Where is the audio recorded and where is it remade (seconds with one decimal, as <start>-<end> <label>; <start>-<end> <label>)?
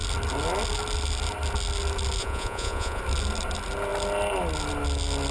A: 0.0-2.2 recorded; 2.2-3.0 remade; 3.0-5.3 recorded